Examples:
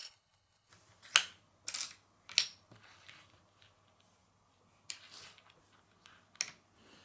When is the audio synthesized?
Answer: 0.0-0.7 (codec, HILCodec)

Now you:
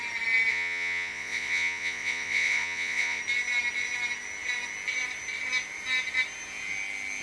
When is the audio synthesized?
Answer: 0.5-3.2 (vocoder, Vocos)

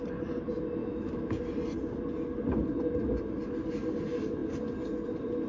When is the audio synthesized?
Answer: 0.8-1.4 (autoencoder, DAC-VAE)